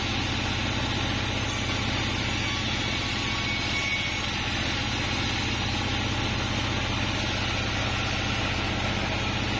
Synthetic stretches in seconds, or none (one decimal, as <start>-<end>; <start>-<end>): none